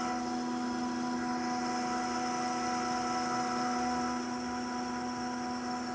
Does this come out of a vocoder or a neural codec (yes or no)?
no